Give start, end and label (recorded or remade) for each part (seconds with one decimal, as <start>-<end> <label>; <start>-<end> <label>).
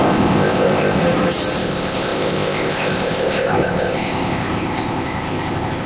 0.0-1.0 remade; 1.0-1.6 recorded; 1.6-5.9 remade